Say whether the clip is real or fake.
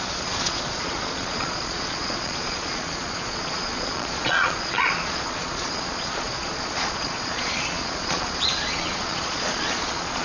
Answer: fake